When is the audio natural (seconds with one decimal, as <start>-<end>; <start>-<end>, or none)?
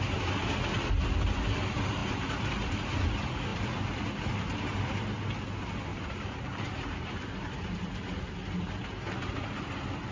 0.0-2.0; 2.7-5.9; 8.2-10.1